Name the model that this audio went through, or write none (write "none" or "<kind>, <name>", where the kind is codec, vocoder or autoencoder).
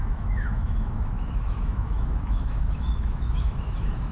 autoencoder, DAC-VAE